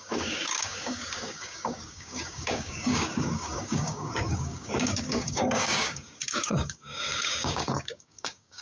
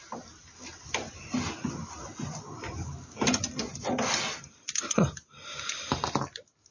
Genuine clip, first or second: second